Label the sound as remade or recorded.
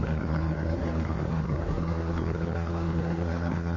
remade